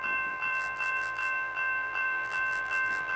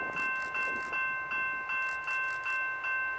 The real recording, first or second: second